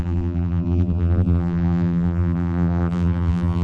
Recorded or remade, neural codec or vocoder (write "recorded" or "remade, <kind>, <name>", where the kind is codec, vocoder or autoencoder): remade, vocoder, BigVGAN v2